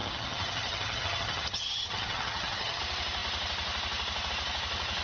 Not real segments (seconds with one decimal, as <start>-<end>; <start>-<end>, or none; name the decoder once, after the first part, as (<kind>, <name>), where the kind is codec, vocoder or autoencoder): 0.0-2.8 (vocoder, HiFi-GAN)